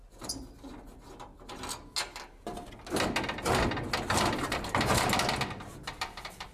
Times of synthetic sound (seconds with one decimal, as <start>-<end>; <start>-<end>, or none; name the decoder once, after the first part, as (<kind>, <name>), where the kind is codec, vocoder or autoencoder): none